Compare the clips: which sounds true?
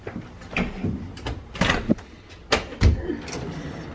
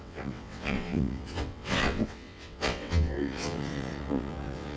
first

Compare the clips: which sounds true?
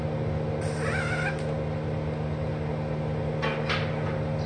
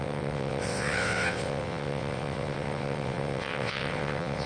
first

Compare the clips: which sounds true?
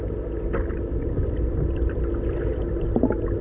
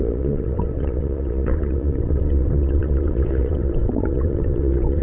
first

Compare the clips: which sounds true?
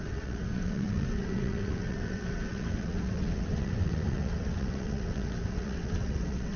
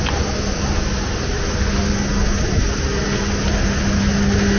second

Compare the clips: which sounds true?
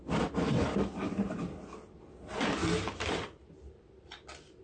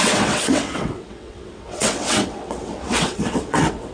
first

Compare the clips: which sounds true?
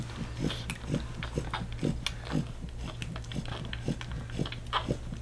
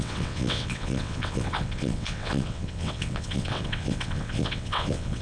first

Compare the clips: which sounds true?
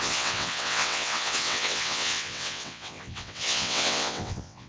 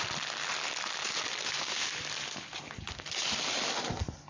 second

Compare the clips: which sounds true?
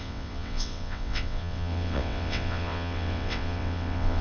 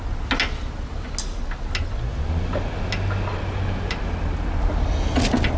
second